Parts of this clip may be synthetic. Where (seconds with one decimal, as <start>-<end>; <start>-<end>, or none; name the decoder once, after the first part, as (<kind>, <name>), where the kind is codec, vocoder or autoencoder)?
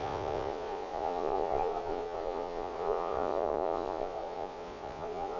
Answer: 0.0-5.4 (vocoder, Vocos)